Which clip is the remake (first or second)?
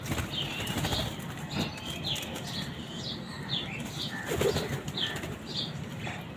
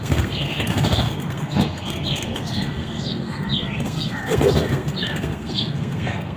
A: second